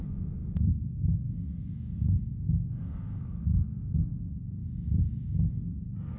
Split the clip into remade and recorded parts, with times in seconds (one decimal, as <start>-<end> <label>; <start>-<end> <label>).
0.0-4.6 remade; 4.6-5.5 recorded; 5.5-6.2 remade